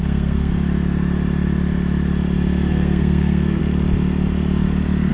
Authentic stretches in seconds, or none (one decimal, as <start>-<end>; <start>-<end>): 0.5-2.7; 3.6-5.1